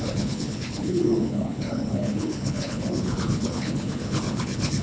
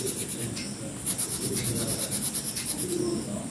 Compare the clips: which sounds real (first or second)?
second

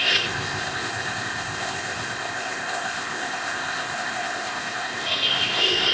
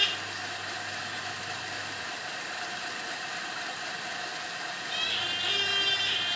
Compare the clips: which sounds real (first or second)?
second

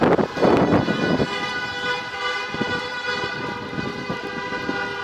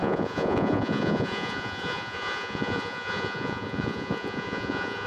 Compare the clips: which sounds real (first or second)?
first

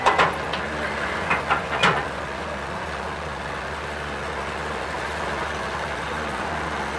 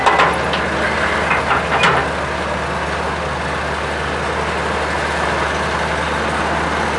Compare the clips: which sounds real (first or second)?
second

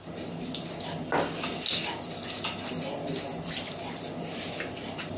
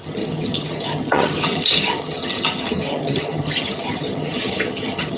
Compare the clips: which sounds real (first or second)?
first